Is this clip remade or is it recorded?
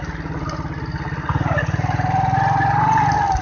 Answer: recorded